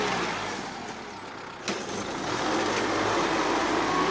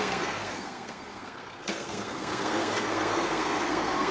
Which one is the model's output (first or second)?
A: second